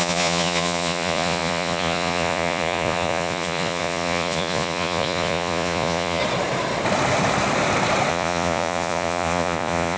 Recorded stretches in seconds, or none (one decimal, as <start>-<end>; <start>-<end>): 6.2-8.1